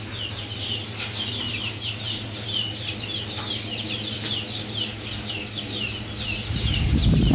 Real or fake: real